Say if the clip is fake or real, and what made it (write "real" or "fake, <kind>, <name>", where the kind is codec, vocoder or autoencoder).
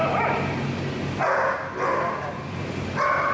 real